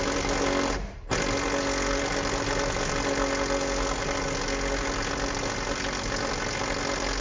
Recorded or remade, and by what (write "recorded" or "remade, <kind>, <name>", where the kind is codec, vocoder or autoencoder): recorded